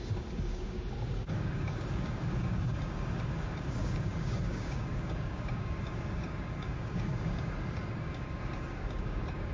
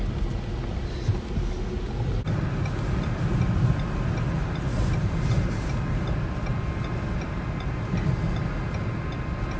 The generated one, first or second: first